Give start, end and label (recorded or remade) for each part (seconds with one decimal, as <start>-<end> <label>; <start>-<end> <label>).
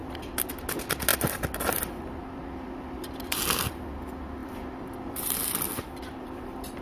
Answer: 0.0-1.1 recorded; 1.1-3.4 remade; 3.4-4.4 recorded; 4.4-5.4 remade; 5.4-6.8 recorded